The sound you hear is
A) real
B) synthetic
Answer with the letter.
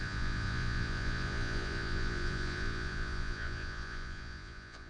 B